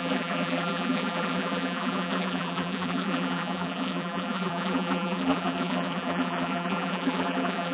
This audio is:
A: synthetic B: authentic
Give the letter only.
A